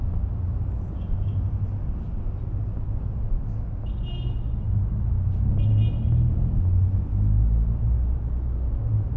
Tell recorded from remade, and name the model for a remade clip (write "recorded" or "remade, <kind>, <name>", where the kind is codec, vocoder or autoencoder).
recorded